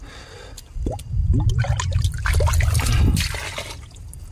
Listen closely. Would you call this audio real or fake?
real